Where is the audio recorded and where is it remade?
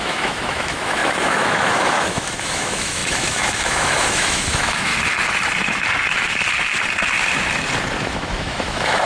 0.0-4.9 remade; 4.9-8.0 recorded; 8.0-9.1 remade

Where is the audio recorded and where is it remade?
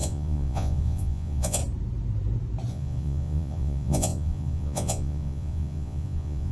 0.0-1.6 remade; 1.6-2.7 recorded; 2.7-6.5 remade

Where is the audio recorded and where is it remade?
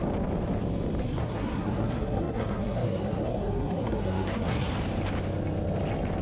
0.0-1.0 recorded; 1.0-4.7 remade; 4.7-6.2 recorded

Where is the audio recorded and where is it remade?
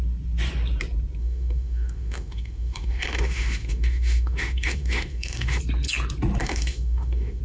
0.0-1.2 recorded; 1.2-5.6 remade; 5.6-6.4 recorded; 6.4-7.4 remade